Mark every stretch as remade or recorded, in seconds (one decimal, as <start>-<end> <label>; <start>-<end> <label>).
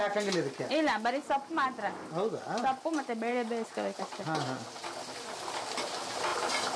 0.0-6.8 recorded